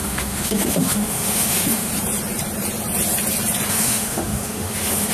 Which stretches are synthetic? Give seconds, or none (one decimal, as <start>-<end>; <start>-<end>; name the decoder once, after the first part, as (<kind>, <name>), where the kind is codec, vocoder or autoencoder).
0.0-1.9 (autoencoder, DAC-VAE); 3.7-5.1